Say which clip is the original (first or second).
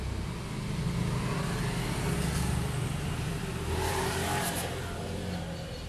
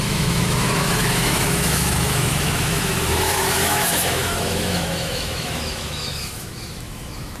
first